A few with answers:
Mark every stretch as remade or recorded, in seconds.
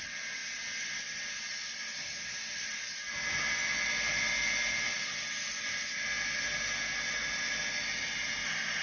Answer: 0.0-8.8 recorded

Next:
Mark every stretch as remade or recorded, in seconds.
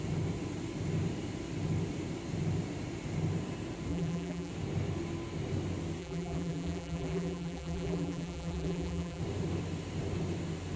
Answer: 0.0-3.9 recorded; 3.9-4.5 remade; 4.5-6.0 recorded; 6.0-9.2 remade; 9.2-10.8 recorded